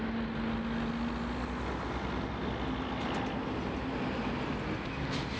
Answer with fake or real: real